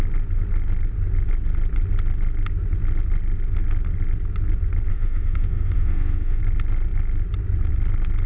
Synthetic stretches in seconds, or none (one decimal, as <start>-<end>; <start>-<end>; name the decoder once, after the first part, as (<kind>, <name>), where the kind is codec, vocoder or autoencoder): 4.9-6.4 (autoencoder, DAC-VAE)